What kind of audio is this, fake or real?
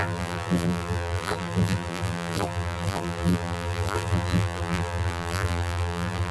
fake